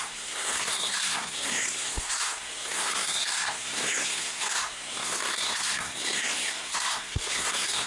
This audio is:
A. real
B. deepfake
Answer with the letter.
B